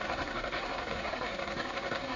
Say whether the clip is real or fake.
fake